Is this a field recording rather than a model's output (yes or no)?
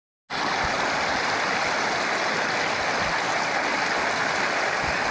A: yes